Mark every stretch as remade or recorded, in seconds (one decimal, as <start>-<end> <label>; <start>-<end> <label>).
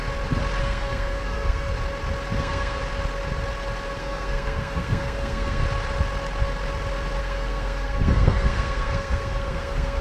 0.0-0.6 recorded; 0.6-1.7 remade; 1.7-2.4 recorded; 2.4-2.8 remade; 2.8-4.0 recorded; 4.0-5.6 remade; 5.6-7.2 recorded; 7.2-10.0 remade